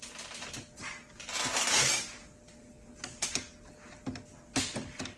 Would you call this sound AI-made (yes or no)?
no